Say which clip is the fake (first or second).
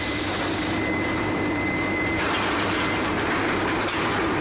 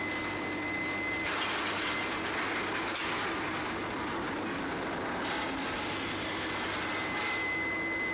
first